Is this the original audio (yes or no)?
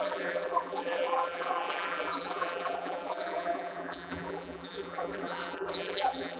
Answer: no